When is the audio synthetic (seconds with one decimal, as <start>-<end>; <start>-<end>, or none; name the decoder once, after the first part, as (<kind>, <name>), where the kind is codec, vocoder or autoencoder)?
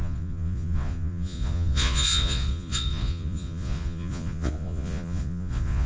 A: 0.0-5.9 (vocoder, Vocos)